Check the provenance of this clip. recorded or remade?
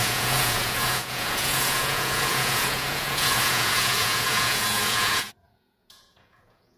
remade